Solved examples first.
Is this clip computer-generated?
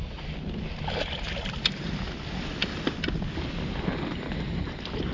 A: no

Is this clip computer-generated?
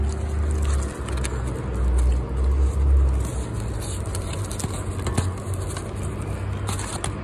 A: no